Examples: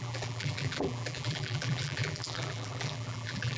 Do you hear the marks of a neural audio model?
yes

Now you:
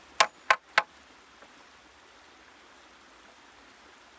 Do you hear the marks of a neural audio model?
no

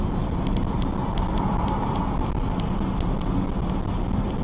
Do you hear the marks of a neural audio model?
no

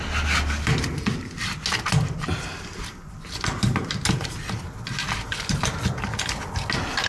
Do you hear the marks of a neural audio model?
no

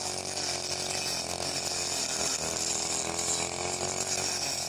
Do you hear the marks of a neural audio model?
no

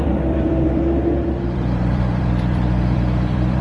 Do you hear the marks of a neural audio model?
yes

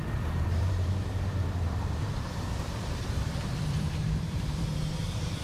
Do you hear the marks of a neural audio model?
yes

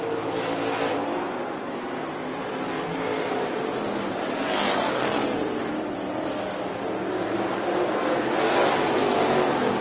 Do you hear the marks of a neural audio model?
no